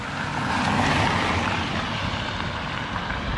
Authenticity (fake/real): real